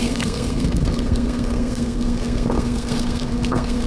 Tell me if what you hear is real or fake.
fake